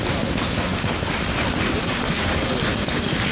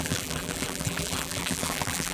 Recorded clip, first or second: first